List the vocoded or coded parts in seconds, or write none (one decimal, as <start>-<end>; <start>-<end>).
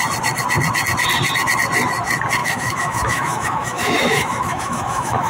2.4-5.3